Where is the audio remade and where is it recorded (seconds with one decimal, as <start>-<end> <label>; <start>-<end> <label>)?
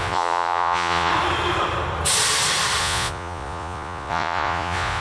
0.0-1.1 remade; 1.1-2.8 recorded; 2.8-5.0 remade